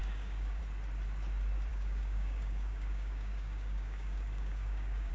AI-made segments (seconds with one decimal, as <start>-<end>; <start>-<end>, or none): 0.0-0.6; 1.7-5.1